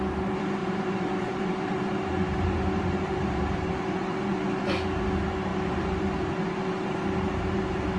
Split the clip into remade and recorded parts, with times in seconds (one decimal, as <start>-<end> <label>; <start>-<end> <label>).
0.0-0.6 recorded; 0.6-3.7 remade; 3.7-5.5 recorded; 5.5-6.0 remade; 6.0-8.0 recorded